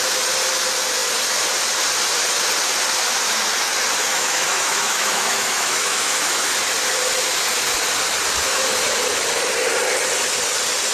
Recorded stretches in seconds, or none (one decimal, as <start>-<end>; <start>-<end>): 0.0-4.1; 6.5-10.9

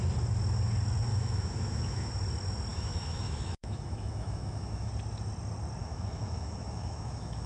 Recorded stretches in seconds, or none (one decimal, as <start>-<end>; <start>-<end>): 0.0-1.1; 2.1-2.7; 4.9-5.8

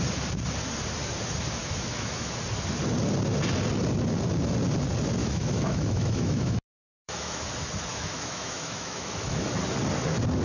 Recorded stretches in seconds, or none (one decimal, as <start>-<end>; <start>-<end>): 0.0-1.6; 2.4-5.2; 7.5-7.9; 9.5-10.4

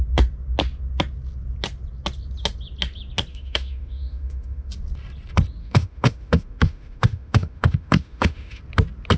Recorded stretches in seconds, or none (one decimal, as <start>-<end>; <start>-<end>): 0.0-3.3; 4.7-5.6; 8.6-9.2

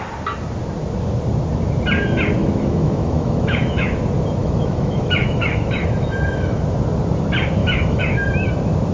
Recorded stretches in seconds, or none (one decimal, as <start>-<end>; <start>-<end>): 0.0-2.4; 4.0-4.4; 6.6-7.6; 8.5-8.9